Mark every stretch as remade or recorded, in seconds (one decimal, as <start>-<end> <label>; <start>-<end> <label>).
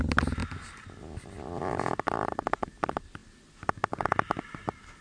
0.0-5.0 recorded